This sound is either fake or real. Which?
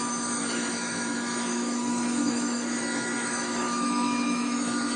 fake